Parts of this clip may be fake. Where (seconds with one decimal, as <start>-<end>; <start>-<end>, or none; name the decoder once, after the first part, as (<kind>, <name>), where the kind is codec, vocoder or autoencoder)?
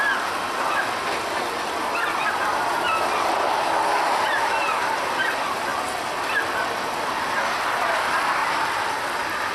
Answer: 2.7-3.6 (vocoder, BigVGAN v2); 5.7-6.4; 8.4-8.9